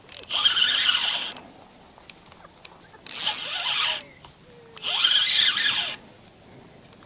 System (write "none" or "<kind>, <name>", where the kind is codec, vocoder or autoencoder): none